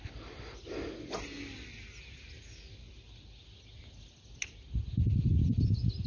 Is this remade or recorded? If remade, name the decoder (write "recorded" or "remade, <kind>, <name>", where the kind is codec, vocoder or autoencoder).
recorded